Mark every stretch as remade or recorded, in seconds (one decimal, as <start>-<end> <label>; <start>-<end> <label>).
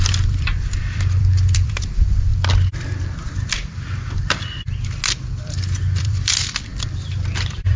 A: 0.0-2.3 remade; 2.3-5.1 recorded; 5.1-7.8 remade